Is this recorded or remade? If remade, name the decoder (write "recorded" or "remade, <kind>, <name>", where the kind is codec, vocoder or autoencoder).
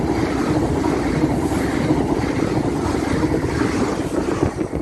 recorded